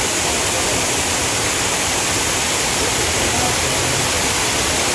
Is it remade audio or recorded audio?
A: remade